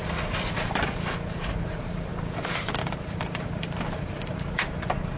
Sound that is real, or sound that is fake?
fake